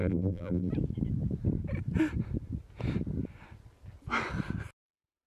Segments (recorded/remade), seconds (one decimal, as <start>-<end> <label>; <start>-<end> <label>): 0.0-0.7 remade; 0.7-5.3 recorded